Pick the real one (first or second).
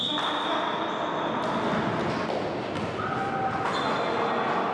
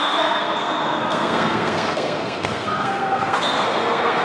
first